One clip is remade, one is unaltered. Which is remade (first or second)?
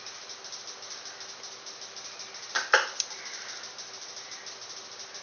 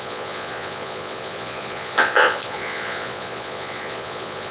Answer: second